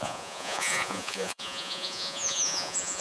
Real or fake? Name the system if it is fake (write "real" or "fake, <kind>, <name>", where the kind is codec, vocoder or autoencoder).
fake, vocoder, Vocos